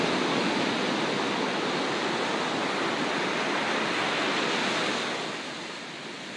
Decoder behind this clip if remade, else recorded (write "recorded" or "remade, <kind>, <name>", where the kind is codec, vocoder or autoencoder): recorded